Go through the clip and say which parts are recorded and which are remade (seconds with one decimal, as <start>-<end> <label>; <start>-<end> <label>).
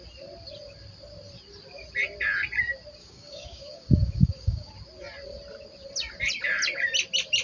0.0-3.0 recorded; 3.0-4.7 remade; 4.7-7.4 recorded